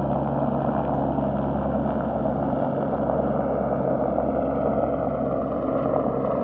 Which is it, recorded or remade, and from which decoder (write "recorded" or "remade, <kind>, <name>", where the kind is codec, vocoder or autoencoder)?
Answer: recorded